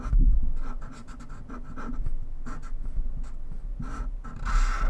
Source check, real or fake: real